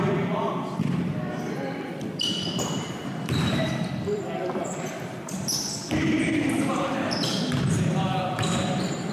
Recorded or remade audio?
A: remade